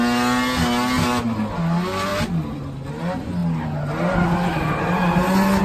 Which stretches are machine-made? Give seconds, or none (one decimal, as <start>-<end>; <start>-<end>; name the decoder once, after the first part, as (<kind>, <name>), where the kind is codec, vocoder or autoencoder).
none